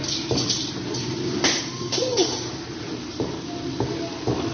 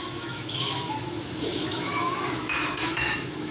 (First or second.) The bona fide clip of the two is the first